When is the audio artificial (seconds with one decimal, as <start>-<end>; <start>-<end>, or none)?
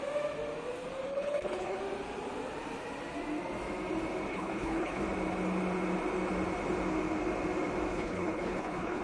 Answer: 1.1-1.8; 4.3-5.0; 7.9-9.0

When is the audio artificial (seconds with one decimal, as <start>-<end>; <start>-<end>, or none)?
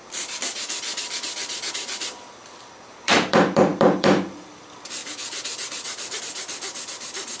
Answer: 0.0-0.9; 1.7-5.0; 6.2-7.4